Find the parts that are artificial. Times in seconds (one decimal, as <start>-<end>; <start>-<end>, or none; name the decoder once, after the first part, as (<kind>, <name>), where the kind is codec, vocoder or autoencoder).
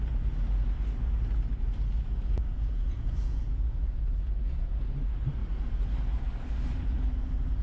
2.5-4.9 (vocoder, Vocos)